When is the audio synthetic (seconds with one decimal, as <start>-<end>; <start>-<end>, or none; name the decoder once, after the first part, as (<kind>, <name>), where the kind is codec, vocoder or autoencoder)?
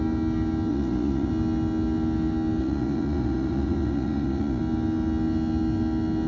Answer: 0.7-1.3 (vocoder, Vocos); 2.6-4.6